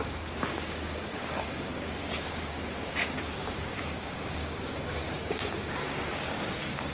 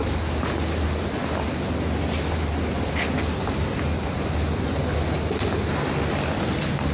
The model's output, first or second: first